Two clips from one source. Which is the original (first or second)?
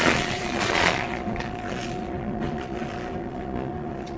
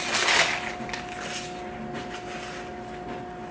second